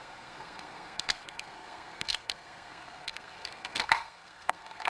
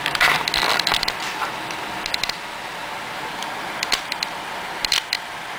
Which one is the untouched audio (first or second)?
second